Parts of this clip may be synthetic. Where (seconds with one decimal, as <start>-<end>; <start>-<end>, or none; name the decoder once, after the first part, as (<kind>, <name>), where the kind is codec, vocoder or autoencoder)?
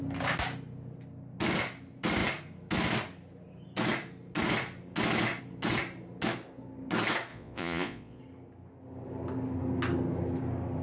7.3-8.2 (vocoder, Vocos)